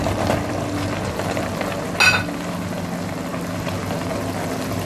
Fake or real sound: real